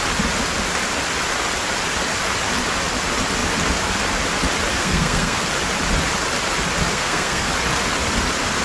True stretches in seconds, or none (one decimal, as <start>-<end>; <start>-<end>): 0.0-4.7; 5.4-6.9; 7.5-8.6